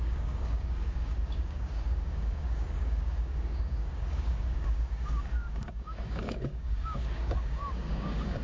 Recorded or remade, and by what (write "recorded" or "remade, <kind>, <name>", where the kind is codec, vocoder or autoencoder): remade, codec, DAC